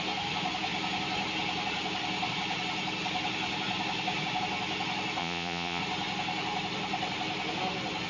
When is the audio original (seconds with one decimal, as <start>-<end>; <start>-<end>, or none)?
0.0-5.2; 5.8-8.1